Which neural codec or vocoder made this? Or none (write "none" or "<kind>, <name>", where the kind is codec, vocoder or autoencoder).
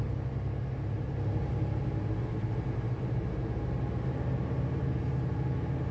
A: none